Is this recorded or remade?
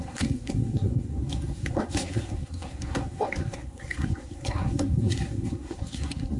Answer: remade